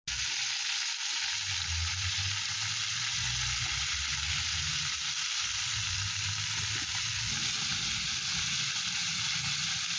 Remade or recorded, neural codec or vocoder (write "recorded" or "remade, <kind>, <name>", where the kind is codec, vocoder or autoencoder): recorded